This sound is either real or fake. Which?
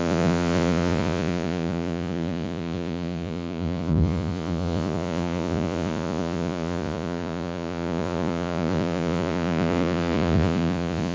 fake